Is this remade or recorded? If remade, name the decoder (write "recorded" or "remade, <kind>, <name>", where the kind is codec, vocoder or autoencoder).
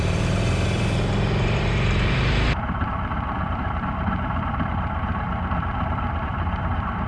remade, vocoder, BigVGAN v2